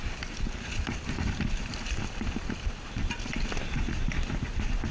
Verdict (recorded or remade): recorded